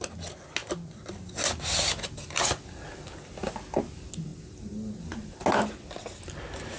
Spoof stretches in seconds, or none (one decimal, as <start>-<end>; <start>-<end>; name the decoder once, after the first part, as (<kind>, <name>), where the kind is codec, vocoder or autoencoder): none